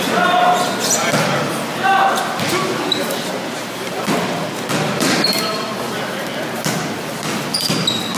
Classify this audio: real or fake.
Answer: real